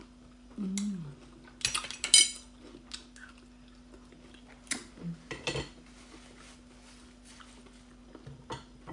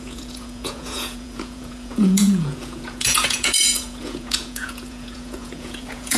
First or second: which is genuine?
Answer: first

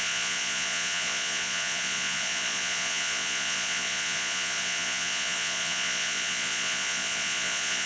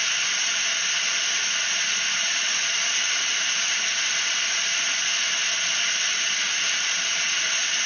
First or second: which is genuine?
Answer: second